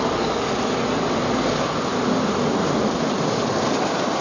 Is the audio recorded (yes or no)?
yes